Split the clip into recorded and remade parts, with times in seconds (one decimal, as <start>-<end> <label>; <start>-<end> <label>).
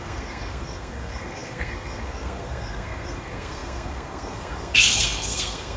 0.0-5.8 remade